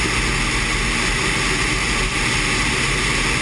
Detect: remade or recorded recorded